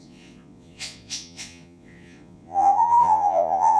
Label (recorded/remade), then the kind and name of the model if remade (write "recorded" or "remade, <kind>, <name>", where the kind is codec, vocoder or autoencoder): remade, vocoder, Vocos